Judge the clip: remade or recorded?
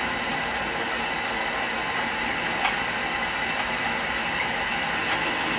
recorded